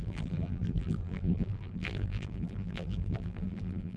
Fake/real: fake